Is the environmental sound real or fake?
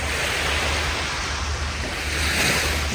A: real